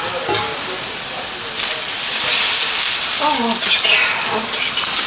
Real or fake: real